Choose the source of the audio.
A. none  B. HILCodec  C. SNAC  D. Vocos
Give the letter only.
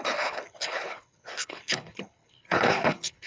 B